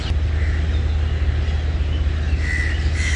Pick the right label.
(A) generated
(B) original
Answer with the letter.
B